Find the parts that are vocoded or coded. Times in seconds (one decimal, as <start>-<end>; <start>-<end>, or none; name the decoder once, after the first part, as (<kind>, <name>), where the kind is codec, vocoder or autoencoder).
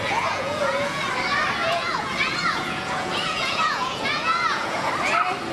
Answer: 0.0-1.0 (vocoder, Vocos); 1.6-4.9